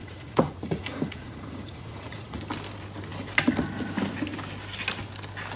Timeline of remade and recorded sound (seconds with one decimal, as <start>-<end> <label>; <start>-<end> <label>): 0.0-2.4 remade; 2.4-5.6 recorded